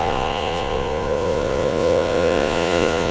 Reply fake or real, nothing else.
fake